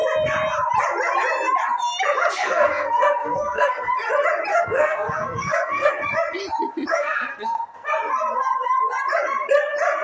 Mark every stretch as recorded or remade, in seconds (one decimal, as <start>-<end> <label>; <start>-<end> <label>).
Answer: 0.0-2.4 recorded; 2.4-3.9 remade; 3.9-4.5 recorded; 4.5-5.9 remade; 5.9-6.9 recorded; 6.9-7.9 remade; 7.9-10.0 recorded